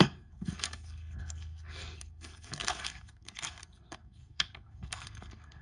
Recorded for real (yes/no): no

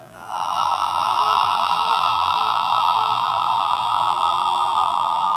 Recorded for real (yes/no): no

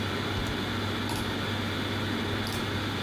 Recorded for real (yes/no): yes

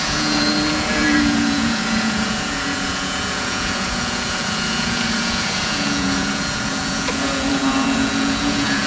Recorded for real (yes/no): no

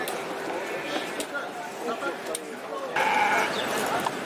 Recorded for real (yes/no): yes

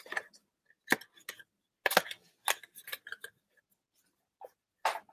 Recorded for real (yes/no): yes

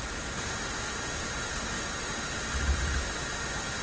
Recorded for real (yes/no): yes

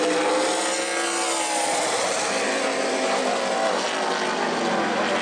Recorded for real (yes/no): yes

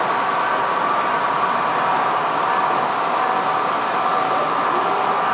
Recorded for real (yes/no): yes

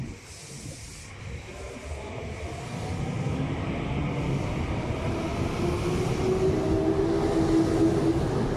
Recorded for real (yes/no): yes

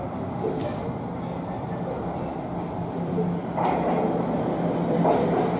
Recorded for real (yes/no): yes